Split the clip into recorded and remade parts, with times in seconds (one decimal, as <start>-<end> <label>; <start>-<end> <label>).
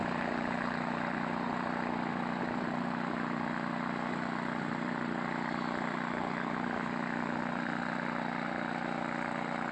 0.0-2.4 remade; 2.4-9.7 recorded